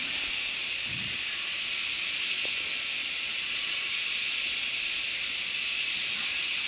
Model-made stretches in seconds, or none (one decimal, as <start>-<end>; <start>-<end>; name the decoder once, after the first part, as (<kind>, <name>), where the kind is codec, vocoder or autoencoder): 0.6-1.7 (vocoder, Vocos); 3.0-5.0